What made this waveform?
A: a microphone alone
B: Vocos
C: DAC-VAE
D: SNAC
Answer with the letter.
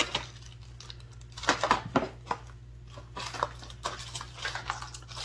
A